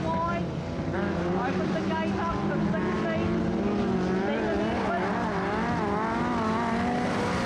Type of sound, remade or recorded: recorded